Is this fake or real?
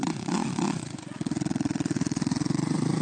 fake